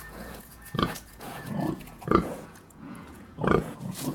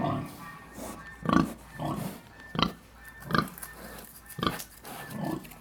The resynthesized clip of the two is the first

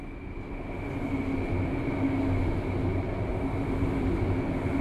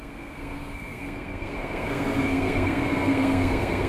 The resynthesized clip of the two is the second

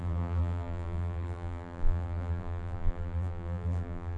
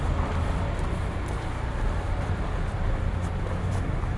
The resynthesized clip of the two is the first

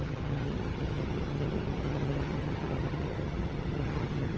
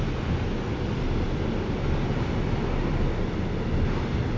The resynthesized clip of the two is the first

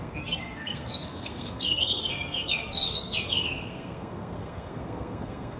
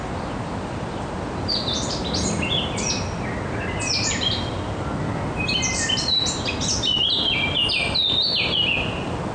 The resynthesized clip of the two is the first